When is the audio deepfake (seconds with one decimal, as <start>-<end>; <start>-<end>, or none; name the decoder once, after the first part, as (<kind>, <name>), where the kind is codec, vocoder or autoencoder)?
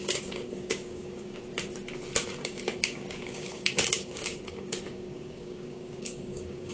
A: 0.0-1.4 (codec, DAC); 2.2-6.7